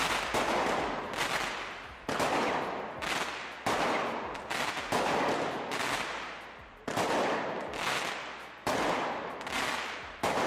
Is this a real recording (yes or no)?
yes